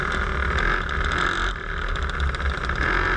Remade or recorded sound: recorded